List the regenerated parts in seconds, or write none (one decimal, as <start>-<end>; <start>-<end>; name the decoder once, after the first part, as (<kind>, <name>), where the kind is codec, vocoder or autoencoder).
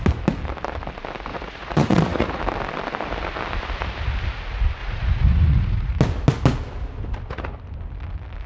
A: 1.3-2.4 (vocoder, Vocos); 4.8-6.0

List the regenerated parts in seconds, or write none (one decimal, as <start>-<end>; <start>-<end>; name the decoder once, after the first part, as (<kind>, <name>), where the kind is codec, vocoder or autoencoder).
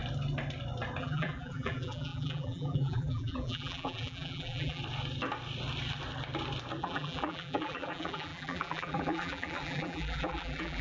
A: 1.0-4.8 (vocoder, BigVGAN v2); 6.8-10.8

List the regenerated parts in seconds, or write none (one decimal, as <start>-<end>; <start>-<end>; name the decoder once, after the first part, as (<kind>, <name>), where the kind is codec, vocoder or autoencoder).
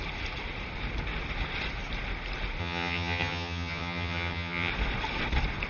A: 2.6-4.7 (vocoder, HiFi-GAN)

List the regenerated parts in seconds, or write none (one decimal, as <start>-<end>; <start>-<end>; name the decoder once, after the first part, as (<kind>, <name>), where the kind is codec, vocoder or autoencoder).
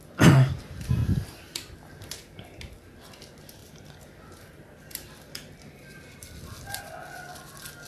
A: 1.0-1.8 (vocoder, BigVGAN v2); 3.6-6.8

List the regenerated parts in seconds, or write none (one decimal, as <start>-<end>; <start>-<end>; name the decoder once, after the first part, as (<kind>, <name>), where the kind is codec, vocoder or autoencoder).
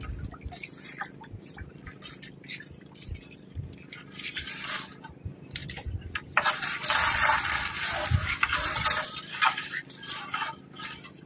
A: 5.6-6.9 (vocoder, BigVGAN v2)